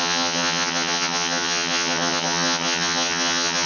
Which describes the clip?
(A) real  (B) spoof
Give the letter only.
B